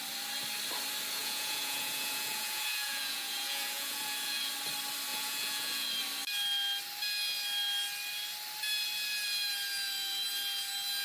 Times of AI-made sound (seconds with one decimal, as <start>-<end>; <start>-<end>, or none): 1.2-4.5; 5.1-5.9